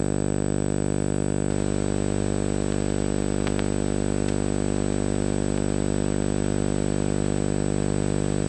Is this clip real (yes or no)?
yes